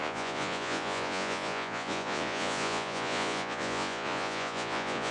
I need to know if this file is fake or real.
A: fake